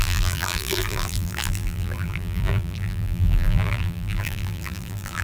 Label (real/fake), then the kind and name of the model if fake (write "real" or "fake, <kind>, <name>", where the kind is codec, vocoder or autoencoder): fake, vocoder, BigVGAN v2